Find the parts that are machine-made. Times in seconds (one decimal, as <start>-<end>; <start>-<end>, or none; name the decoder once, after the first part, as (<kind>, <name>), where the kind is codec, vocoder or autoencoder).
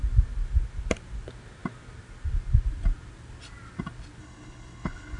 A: 4.2-5.2 (codec, HILCodec)